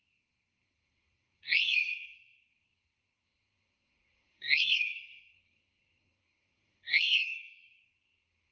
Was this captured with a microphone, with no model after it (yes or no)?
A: no